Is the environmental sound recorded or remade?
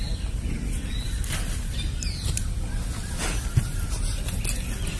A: recorded